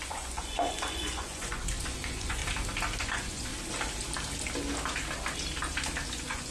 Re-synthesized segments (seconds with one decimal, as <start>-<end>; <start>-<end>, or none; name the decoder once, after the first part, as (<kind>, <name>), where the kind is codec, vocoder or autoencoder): 0.0-2.4 (vocoder, Vocos); 3.0-3.5; 6.1-6.5